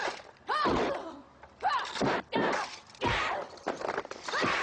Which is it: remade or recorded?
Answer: recorded